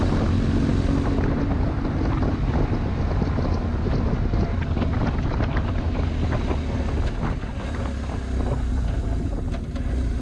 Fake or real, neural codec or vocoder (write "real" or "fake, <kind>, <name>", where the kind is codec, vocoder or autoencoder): real